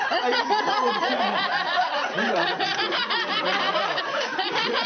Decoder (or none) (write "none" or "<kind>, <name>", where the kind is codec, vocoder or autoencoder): vocoder, Vocos